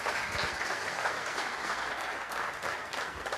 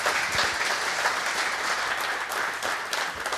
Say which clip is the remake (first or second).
first